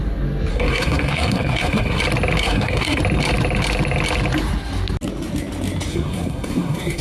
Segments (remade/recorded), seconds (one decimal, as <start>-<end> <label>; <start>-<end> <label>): 0.0-0.5 recorded; 0.5-2.0 remade; 2.0-2.4 recorded; 2.4-3.0 remade; 3.0-5.9 recorded; 5.9-7.0 remade